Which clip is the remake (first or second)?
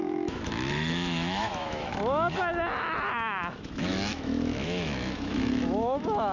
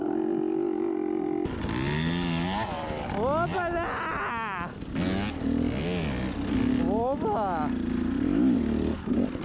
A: first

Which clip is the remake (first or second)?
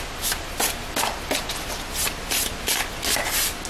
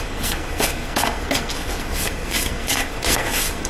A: second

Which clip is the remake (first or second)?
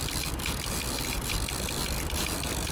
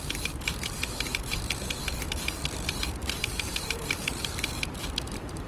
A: second